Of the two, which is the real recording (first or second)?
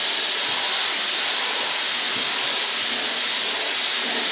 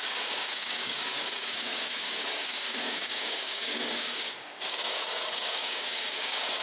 first